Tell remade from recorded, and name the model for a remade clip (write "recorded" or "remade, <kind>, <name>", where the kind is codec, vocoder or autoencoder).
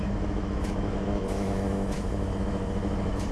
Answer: remade, autoencoder, DAC-VAE